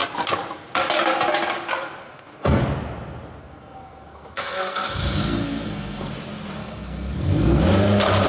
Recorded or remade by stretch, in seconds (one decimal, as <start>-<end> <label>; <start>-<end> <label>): 0.0-2.0 recorded; 2.0-2.6 remade; 2.6-3.4 recorded; 3.4-6.1 remade; 6.1-6.6 recorded; 6.6-7.6 remade; 7.6-8.3 recorded